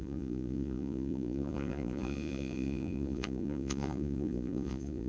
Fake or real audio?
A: fake